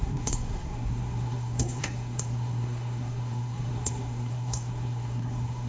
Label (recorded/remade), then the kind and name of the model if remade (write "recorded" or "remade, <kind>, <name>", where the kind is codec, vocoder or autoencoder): remade, codec, SNAC